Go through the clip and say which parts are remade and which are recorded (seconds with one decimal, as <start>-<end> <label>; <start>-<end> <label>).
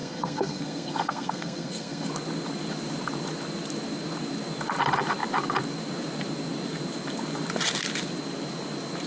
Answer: 0.0-2.1 remade; 2.1-9.1 recorded